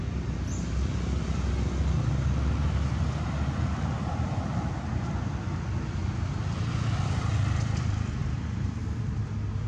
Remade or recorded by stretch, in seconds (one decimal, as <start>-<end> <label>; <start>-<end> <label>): 0.0-8.2 recorded; 8.2-9.0 remade; 9.0-9.7 recorded